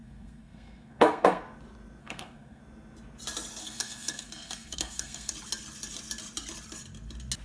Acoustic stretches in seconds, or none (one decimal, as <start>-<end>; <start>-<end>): 1.4-2.0; 2.6-3.6; 5.3-7.4